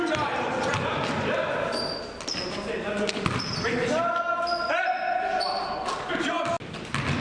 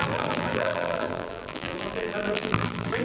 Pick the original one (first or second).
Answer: first